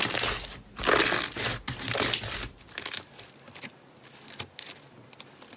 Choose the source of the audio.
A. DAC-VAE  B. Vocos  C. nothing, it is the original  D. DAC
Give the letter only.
C